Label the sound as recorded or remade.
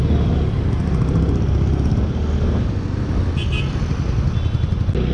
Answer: recorded